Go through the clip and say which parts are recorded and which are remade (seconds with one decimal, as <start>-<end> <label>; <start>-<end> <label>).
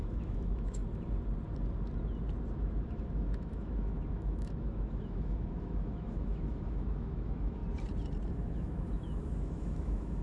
0.0-0.8 remade; 0.8-2.6 recorded; 2.6-7.6 remade; 7.6-8.3 recorded; 8.3-10.2 remade